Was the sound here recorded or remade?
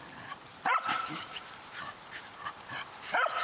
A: remade